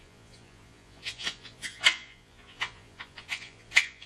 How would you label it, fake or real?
fake